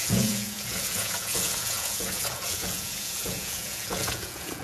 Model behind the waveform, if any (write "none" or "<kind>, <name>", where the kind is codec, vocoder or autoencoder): vocoder, Vocos